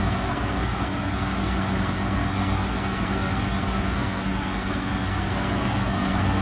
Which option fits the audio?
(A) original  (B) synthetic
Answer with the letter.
B